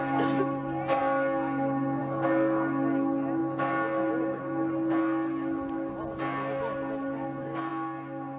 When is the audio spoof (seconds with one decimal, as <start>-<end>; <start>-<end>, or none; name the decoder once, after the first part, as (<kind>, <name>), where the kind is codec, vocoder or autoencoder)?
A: none